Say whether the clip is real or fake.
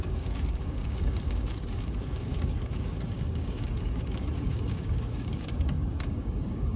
fake